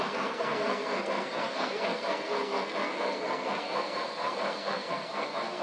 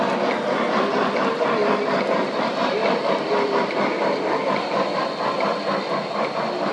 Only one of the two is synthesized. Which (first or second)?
first